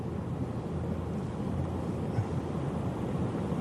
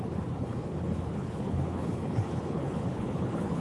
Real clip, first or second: first